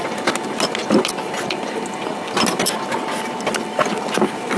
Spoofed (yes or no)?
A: no